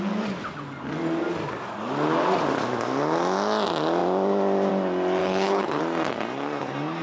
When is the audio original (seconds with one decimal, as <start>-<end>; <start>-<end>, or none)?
0.0-5.2; 5.8-7.0